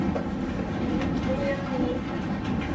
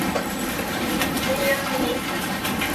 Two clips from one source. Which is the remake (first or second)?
second